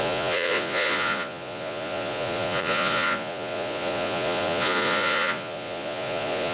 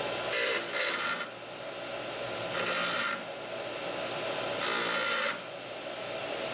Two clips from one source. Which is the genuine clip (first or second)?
second